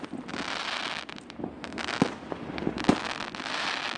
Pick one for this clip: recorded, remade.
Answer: recorded